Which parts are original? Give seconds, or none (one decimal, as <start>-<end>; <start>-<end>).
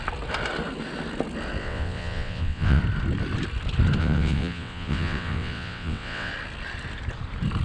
0.0-1.6; 2.8-4.0; 6.3-7.6